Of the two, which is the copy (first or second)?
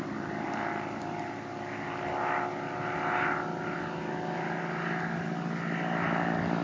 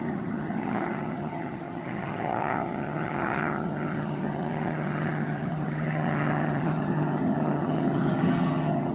second